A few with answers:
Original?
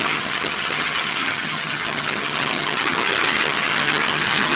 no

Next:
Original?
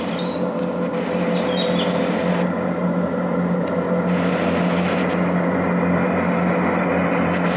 yes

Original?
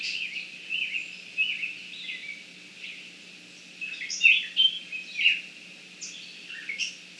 yes